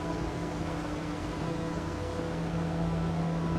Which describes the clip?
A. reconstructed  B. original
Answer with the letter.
A